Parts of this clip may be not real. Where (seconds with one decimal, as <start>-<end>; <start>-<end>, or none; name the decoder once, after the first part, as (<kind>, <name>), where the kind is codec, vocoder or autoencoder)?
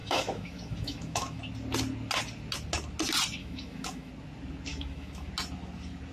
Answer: 0.0-1.4 (autoencoder, DAC-VAE); 3.4-4.1; 4.7-5.3